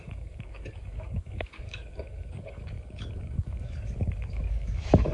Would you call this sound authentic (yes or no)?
no